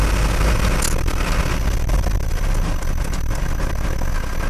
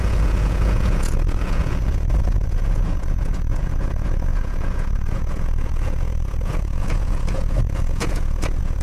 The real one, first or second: first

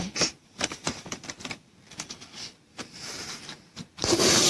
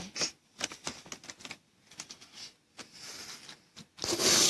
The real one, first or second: second